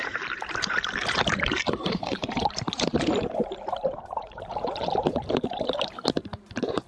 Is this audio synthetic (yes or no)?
yes